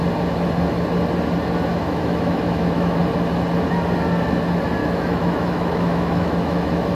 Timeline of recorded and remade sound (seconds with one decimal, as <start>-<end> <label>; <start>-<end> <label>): 0.0-1.7 recorded; 1.7-3.0 remade; 3.0-4.8 recorded; 4.8-6.9 remade